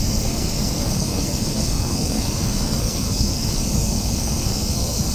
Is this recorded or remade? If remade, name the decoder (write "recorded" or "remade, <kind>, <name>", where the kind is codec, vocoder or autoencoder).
remade, codec, SNAC